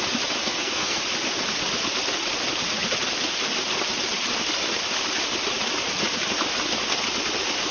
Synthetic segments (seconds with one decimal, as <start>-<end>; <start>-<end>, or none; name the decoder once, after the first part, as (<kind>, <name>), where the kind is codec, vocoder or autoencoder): 0.4-1.0 (codec, SNAC)